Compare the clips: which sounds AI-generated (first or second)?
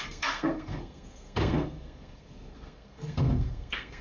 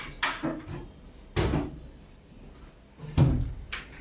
first